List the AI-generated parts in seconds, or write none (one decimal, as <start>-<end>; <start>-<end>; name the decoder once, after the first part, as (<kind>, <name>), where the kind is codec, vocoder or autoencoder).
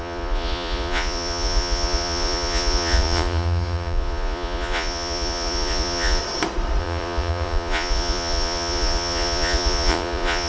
0.0-6.2 (vocoder, Vocos); 6.8-10.5